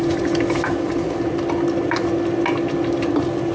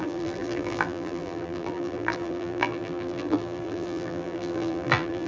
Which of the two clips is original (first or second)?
first